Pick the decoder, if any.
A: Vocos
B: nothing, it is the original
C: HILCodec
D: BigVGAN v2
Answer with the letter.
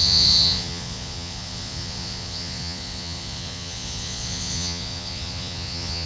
A